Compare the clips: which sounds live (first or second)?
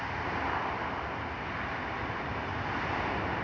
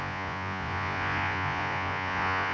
first